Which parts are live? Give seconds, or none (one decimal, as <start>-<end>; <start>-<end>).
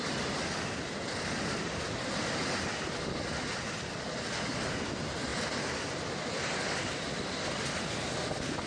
0.0-5.3; 8.1-8.7